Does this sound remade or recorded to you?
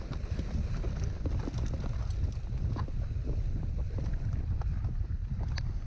recorded